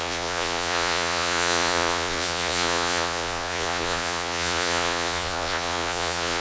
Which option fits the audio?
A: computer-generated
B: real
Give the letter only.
A